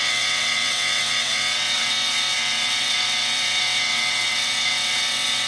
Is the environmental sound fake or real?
fake